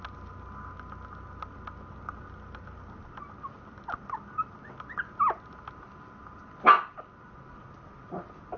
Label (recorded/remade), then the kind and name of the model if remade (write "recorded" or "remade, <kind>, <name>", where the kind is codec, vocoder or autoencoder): recorded